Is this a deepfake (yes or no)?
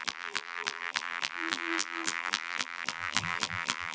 yes